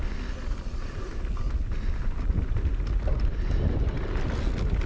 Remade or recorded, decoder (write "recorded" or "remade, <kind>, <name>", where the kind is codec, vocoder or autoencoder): recorded